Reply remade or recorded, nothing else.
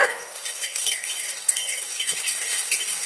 remade